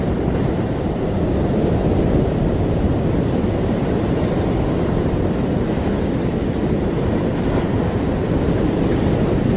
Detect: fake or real fake